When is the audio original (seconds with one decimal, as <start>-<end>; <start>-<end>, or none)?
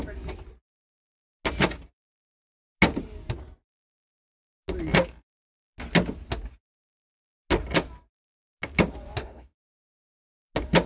0.0-9.2; 10.4-10.9